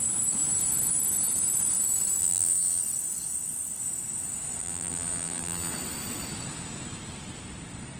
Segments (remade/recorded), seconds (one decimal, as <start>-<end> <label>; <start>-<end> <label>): 0.0-2.2 recorded; 2.2-2.8 remade; 2.8-4.6 recorded; 4.6-5.7 remade; 5.7-8.0 recorded